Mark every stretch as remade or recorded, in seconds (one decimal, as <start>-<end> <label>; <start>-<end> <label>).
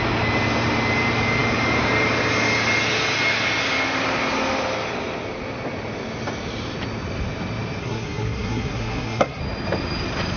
0.0-7.8 recorded; 7.8-9.4 remade; 9.4-10.4 recorded